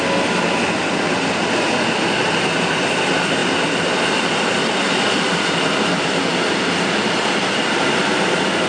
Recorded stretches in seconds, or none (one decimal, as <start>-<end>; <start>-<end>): 0.0-3.4